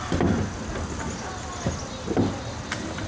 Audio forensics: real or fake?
real